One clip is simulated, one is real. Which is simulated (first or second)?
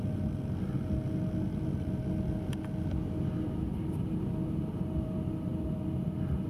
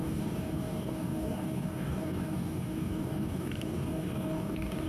second